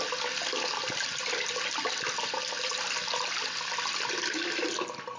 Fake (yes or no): no